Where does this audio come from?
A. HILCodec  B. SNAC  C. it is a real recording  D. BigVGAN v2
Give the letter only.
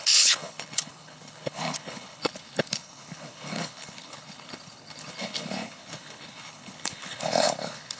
A